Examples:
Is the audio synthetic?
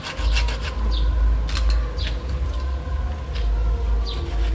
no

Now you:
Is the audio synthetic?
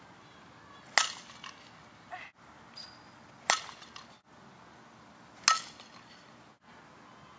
no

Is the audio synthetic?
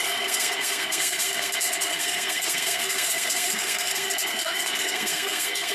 yes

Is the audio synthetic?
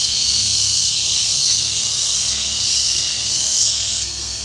yes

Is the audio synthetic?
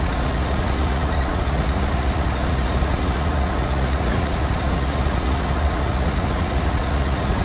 yes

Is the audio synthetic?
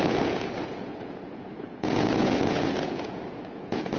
yes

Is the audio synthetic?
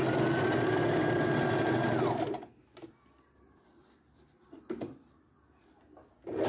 no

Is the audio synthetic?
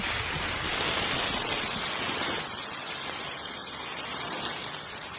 no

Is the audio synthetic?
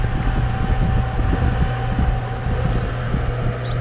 no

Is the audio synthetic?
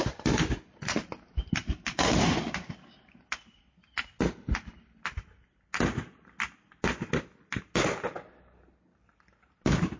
no